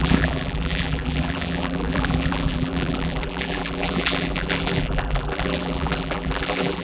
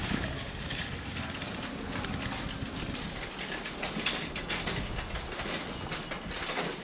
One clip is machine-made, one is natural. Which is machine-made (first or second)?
first